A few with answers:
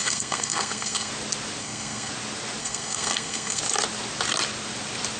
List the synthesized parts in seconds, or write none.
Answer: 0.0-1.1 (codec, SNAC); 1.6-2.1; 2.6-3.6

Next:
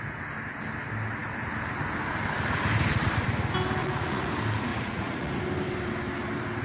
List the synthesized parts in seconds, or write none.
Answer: 3.8-4.3 (vocoder, Vocos); 4.7-5.4